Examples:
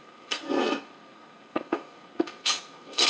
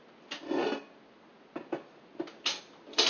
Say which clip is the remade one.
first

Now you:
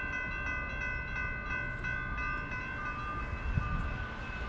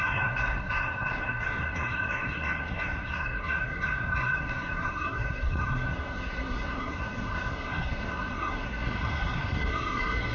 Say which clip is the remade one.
second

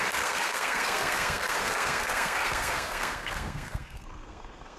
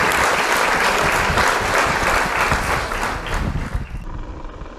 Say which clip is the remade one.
first